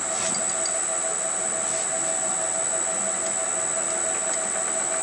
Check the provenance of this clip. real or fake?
real